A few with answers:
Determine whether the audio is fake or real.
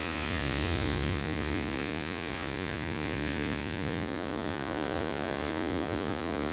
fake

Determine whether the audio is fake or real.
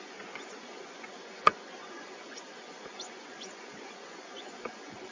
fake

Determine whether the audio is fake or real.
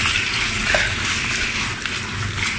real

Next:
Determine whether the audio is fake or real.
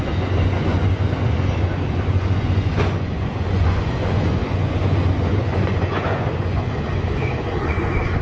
fake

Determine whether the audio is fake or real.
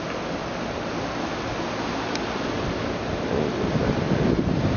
real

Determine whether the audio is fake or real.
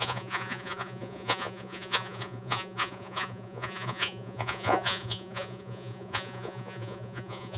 fake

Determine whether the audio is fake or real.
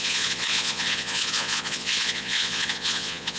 fake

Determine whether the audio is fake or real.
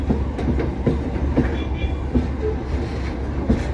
real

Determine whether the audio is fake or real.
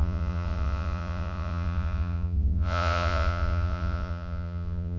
fake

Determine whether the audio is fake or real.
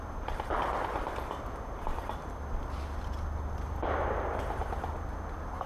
real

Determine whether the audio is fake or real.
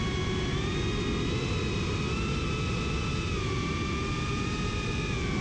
real